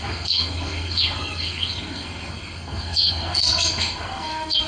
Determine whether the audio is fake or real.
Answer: fake